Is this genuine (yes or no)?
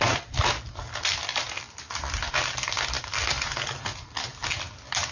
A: yes